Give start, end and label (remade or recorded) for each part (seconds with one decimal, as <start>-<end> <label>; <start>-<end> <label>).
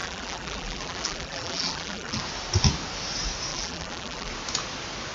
0.0-2.2 remade; 2.2-3.5 recorded; 3.5-4.3 remade; 4.3-5.1 recorded